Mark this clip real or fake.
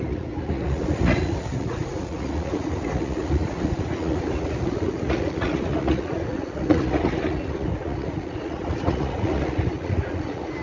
fake